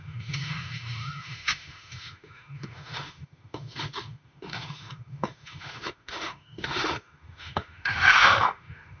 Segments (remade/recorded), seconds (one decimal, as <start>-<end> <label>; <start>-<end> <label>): 0.0-9.0 remade